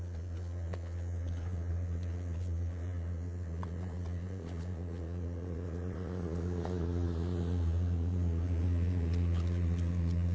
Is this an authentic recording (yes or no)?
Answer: no